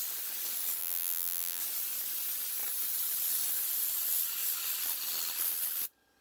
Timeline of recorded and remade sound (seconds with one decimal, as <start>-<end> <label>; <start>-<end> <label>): 0.0-0.8 recorded; 0.8-1.6 remade; 1.6-6.2 recorded

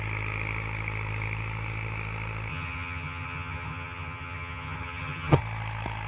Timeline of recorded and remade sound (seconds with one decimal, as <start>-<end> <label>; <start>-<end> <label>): 0.0-2.5 recorded; 2.5-5.4 remade; 5.4-6.1 recorded